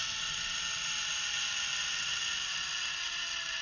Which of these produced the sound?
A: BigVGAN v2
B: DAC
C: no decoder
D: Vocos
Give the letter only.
C